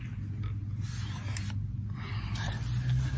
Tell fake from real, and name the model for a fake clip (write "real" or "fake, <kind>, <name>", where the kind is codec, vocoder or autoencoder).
real